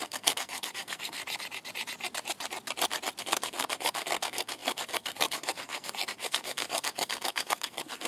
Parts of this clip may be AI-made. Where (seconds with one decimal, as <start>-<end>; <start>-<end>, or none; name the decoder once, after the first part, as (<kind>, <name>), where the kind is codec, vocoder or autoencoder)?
0.0-1.2 (codec, SNAC); 3.2-8.1